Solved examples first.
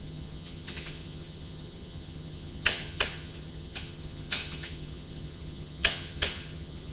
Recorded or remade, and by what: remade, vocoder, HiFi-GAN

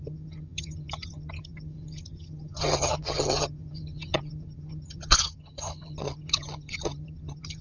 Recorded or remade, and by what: remade, vocoder, HiFi-GAN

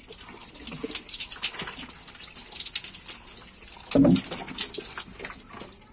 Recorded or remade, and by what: recorded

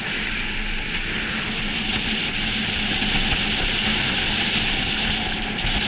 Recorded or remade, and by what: recorded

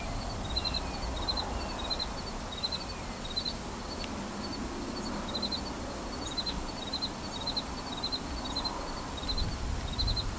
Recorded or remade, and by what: recorded